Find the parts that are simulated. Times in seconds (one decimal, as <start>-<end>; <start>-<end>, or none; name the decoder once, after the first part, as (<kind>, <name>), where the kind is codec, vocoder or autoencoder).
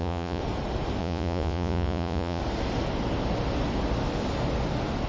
0.0-0.4 (vocoder, Vocos); 1.0-2.4